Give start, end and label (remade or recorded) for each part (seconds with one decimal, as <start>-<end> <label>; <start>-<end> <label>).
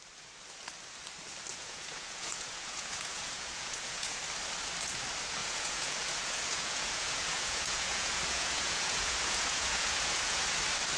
0.0-1.5 recorded; 1.5-4.2 remade; 4.2-5.4 recorded; 5.4-10.6 remade; 10.6-11.0 recorded